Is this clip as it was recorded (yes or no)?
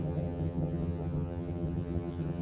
no